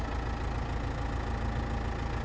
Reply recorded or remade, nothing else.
recorded